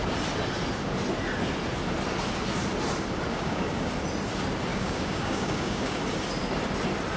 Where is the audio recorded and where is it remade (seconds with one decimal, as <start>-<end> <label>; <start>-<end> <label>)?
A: 0.0-3.3 recorded; 3.3-3.9 remade; 3.9-4.7 recorded; 4.7-6.0 remade; 6.0-7.2 recorded